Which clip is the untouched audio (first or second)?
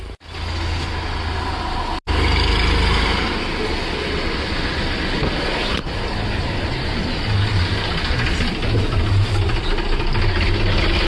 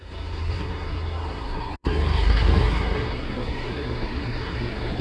first